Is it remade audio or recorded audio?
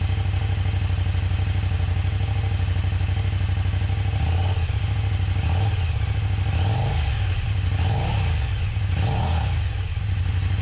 recorded